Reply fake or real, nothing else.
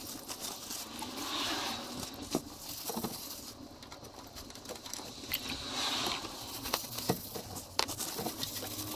real